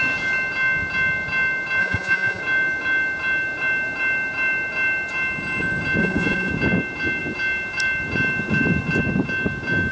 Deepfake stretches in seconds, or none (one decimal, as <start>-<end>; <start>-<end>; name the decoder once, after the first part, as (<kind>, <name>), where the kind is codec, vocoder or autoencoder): 1.8-2.4 (vocoder, Vocos); 6.0-6.5